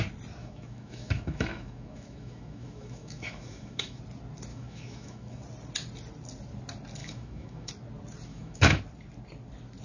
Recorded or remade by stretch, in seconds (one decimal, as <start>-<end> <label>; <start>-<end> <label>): 0.0-0.4 recorded; 0.4-4.0 remade; 4.0-4.5 recorded; 4.5-5.4 remade; 5.4-7.0 recorded; 7.0-7.7 remade; 7.7-8.3 recorded; 8.3-8.8 remade; 8.8-9.8 recorded